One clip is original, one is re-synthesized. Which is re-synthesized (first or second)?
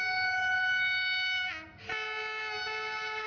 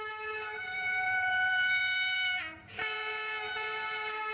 second